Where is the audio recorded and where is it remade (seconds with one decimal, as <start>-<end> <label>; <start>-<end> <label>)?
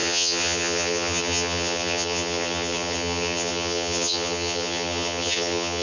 0.0-5.8 remade